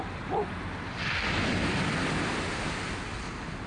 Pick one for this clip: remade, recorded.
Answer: recorded